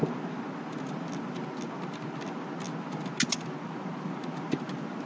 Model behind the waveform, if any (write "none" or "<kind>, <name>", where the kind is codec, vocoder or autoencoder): none